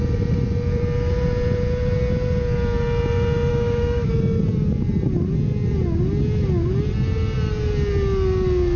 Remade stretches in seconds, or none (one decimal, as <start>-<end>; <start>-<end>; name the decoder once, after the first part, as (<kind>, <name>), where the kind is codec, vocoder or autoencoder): 3.5-4.1 (codec, DAC)